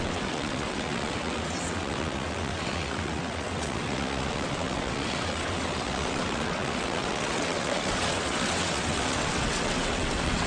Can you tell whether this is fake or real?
fake